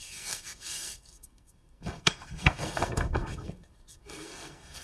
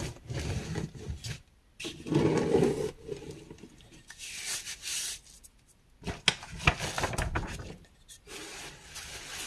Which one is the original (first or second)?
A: second